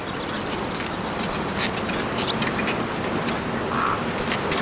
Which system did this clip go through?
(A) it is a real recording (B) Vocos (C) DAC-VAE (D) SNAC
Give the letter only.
A